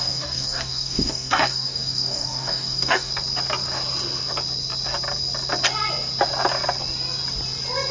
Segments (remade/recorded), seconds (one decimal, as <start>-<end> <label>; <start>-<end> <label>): 0.0-3.1 remade; 3.1-7.9 recorded